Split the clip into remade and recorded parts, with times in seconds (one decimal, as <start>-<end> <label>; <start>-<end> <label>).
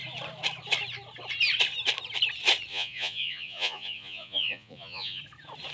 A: 0.0-2.7 recorded; 2.7-5.2 remade; 5.2-5.7 recorded